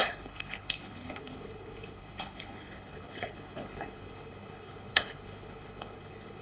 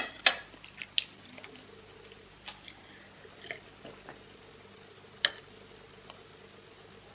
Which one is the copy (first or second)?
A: first